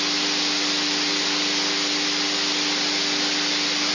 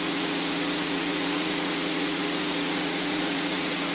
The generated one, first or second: second